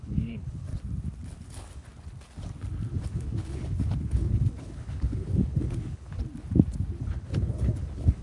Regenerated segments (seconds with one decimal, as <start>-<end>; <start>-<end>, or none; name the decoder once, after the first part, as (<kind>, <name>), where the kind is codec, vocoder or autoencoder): 0.0-0.7 (codec, HILCodec); 1.5-1.9; 2.9-6.2; 7.0-8.2

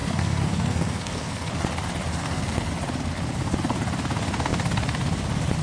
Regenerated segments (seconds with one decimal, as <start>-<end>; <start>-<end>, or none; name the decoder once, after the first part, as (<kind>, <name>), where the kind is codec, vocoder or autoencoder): 0.0-1.5 (codec, SNAC); 2.1-2.7

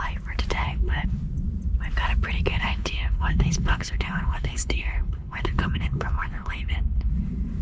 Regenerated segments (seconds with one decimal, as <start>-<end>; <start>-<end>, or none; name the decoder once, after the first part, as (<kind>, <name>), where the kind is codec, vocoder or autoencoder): 0.6-1.2 (codec, HILCodec); 2.5-7.1

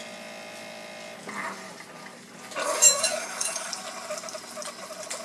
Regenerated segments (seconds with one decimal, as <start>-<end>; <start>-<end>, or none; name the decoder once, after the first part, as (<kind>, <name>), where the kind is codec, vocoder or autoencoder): 2.6-3.7 (codec, DAC)

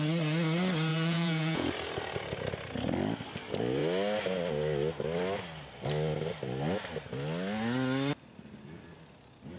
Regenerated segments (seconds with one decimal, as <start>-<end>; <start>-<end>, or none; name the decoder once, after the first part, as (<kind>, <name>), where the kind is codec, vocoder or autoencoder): 0.9-1.7 (vocoder, Vocos)

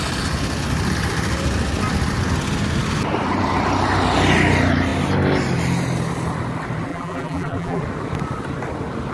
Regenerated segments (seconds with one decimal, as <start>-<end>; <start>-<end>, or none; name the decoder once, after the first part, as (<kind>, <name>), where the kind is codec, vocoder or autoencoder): 6.9-7.8 (vocoder, BigVGAN v2)

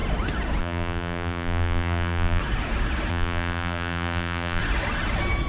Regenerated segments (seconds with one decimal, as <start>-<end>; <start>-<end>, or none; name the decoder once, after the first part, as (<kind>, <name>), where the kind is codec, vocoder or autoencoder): 0.6-2.4 (vocoder, BigVGAN v2); 3.1-4.6